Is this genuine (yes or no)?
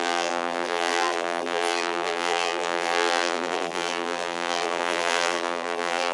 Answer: no